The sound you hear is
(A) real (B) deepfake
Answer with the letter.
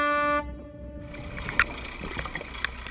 A